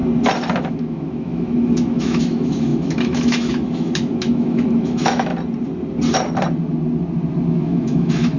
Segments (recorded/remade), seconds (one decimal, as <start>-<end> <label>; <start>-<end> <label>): 0.0-0.7 recorded; 0.7-5.3 remade; 5.3-7.5 recorded; 7.5-8.4 remade